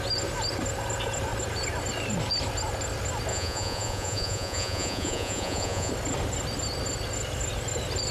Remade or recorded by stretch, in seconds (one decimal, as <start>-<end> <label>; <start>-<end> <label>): 0.0-3.3 recorded; 3.3-5.9 remade; 5.9-8.1 recorded